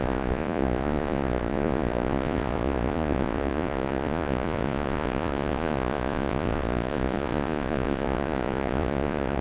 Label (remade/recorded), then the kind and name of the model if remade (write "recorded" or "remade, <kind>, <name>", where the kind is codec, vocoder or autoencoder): remade, vocoder, Vocos